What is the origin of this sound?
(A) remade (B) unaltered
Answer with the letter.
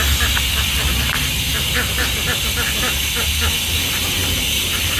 B